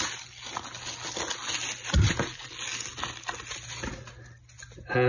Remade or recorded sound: recorded